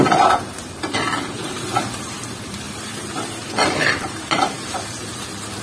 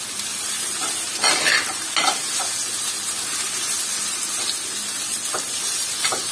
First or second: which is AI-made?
first